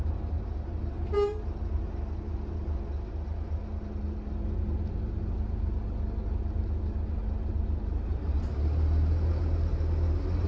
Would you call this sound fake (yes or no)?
no